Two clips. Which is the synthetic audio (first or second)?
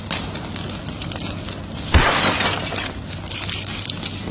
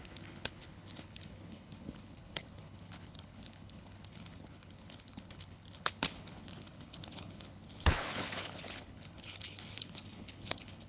second